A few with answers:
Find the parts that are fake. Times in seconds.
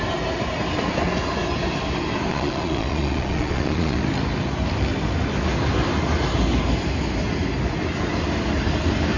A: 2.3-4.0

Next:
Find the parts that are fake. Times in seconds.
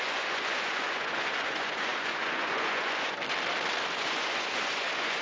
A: 0.0-3.2; 3.8-5.2